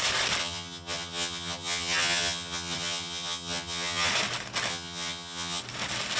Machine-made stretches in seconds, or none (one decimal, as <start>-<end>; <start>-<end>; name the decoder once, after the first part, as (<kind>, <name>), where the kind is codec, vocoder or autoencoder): 0.4-4.1 (vocoder, HiFi-GAN); 4.7-5.6